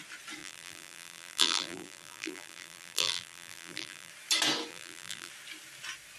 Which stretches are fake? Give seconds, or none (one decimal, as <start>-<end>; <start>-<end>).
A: 0.4-4.1; 4.7-5.3